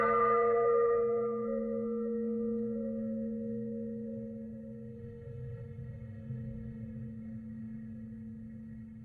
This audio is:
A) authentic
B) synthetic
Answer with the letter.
B